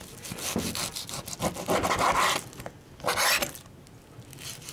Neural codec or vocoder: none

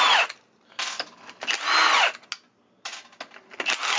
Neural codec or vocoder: none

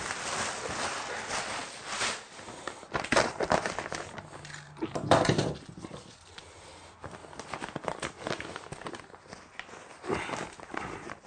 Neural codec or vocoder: none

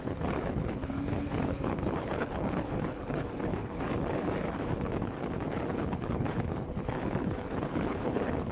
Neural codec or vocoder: codec, HILCodec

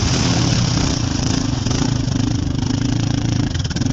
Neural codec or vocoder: vocoder, WaveNeXt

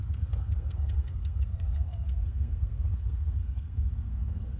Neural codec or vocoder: codec, SNAC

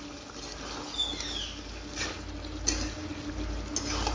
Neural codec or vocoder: none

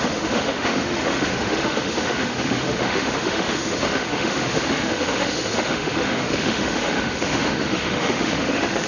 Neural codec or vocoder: autoencoder, DAC-VAE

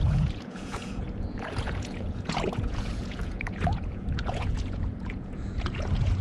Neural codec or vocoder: vocoder, Vocos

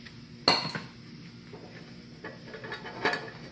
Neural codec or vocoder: none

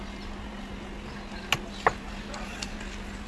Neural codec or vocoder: none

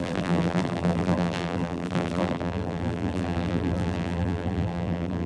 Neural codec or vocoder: vocoder, BigVGAN v2